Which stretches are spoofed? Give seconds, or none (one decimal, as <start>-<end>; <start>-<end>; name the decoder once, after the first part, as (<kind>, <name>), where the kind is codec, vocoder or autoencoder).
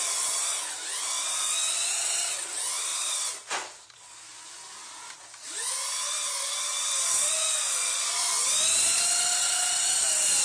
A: none